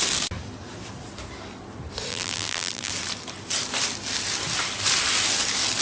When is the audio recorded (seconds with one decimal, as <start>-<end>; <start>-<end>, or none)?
0.0-2.1; 2.9-5.8